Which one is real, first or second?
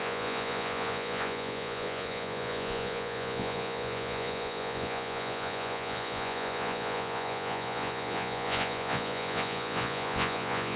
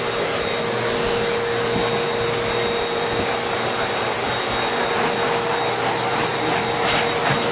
second